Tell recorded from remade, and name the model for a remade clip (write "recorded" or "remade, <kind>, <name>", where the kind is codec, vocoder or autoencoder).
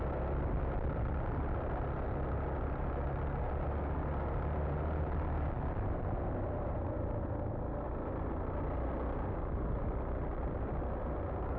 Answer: recorded